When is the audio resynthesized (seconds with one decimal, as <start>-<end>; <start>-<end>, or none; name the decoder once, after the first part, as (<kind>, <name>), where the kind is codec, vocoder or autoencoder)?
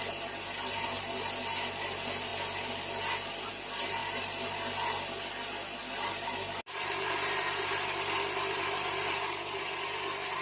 none